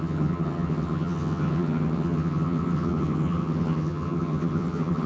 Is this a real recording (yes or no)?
no